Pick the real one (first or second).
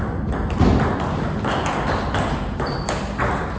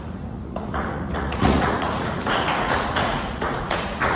first